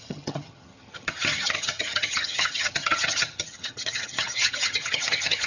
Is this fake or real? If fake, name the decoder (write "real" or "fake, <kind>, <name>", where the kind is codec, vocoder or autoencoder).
fake, vocoder, HiFi-GAN